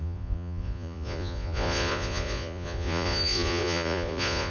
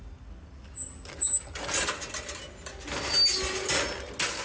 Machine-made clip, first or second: first